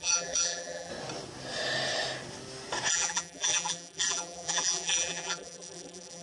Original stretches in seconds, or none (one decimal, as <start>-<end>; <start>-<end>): 0.9-2.9